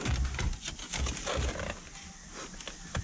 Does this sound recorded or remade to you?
recorded